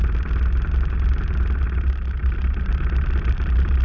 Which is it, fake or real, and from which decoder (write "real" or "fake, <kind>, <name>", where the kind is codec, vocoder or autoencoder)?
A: real